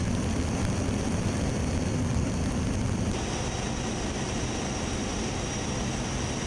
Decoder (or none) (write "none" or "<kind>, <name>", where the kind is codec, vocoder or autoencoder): none